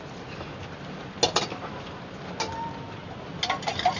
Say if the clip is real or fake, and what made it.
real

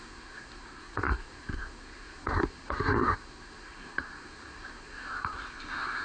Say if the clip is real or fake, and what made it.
fake, codec, SNAC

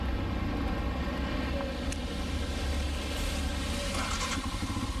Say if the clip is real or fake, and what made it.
real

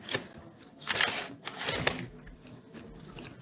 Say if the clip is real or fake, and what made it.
real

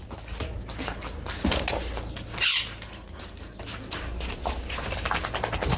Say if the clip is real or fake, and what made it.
real